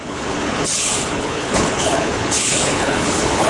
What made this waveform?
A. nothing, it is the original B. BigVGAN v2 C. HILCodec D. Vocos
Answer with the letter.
C